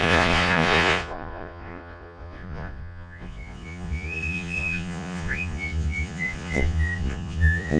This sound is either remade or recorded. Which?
remade